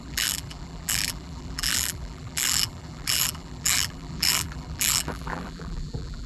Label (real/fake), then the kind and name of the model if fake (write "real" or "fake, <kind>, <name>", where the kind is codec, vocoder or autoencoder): fake, vocoder, BigVGAN v2